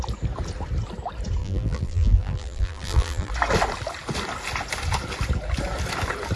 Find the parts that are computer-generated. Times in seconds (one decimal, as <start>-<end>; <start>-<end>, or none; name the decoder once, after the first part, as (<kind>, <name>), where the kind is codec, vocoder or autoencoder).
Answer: 1.4-3.3 (vocoder, BigVGAN v2)